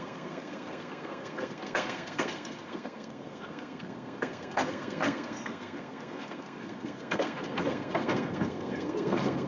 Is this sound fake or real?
fake